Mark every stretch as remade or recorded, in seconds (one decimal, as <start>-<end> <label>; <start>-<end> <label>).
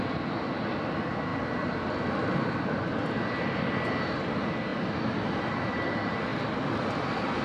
0.0-7.4 recorded